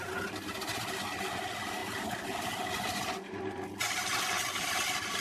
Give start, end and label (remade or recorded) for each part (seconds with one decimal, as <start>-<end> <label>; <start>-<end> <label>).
0.0-5.2 recorded